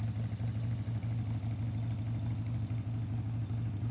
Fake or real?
real